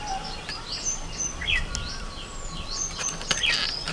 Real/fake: real